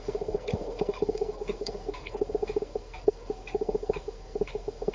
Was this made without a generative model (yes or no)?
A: no